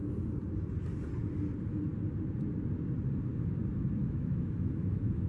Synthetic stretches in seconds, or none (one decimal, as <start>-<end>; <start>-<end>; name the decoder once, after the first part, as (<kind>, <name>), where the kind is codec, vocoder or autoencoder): 4.0-5.3 (autoencoder, DAC-VAE)